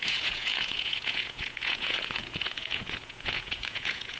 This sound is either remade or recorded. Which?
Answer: remade